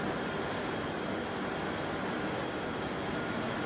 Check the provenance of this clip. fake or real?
real